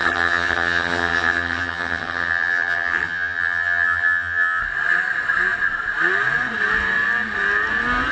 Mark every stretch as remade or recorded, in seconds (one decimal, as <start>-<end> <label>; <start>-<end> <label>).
0.0-4.6 remade; 4.6-8.1 recorded